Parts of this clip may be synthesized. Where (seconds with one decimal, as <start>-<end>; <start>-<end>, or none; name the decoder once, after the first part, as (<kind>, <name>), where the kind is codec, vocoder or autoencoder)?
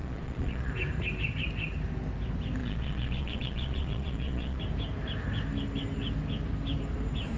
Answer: 0.0-0.7 (vocoder, Vocos); 2.6-4.6